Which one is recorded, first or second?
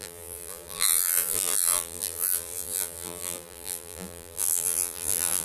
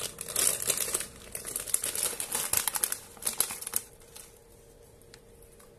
second